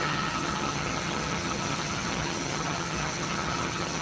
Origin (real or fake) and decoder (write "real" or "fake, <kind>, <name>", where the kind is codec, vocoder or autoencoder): fake, vocoder, HiFi-GAN